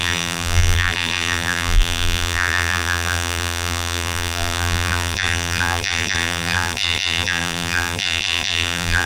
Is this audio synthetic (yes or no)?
yes